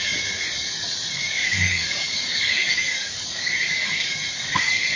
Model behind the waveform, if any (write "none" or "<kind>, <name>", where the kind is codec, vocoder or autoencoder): codec, DAC